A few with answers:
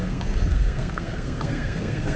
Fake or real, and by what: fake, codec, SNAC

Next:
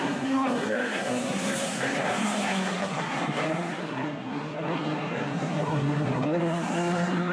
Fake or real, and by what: fake, codec, SNAC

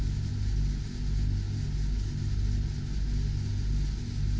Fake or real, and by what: real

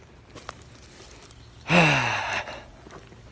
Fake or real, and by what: real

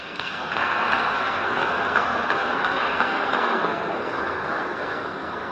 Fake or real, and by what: fake, codec, SNAC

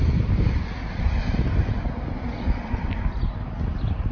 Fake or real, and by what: real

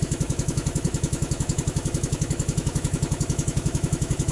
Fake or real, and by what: fake, autoencoder, DAC-VAE